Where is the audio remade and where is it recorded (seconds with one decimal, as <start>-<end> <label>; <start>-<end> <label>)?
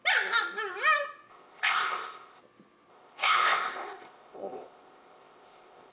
0.0-1.3 recorded; 1.3-2.4 remade; 2.4-2.9 recorded; 2.9-5.9 remade